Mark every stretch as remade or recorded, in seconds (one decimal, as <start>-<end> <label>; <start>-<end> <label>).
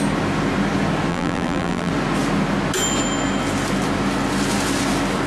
0.0-1.1 recorded; 1.1-1.9 remade; 1.9-5.3 recorded